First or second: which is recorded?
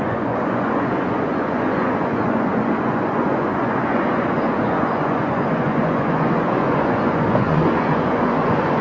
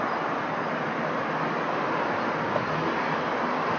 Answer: second